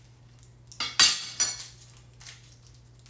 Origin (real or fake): real